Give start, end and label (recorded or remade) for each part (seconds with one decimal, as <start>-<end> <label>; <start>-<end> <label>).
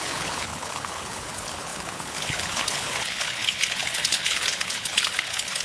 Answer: 0.0-5.6 remade